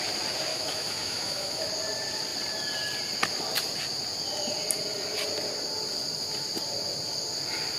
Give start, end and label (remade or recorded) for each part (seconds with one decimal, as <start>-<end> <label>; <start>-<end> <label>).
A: 0.0-0.5 recorded; 0.5-1.7 remade; 1.7-7.8 recorded